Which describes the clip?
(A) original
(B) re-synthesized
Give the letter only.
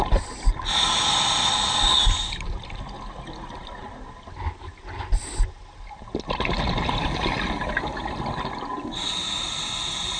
A